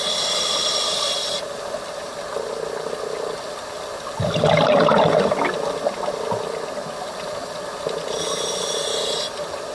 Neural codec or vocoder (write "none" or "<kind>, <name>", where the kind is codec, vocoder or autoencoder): none